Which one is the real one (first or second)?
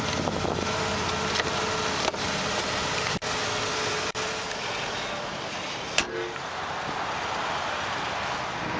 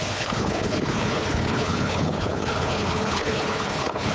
first